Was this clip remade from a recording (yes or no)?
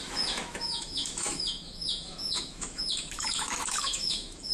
yes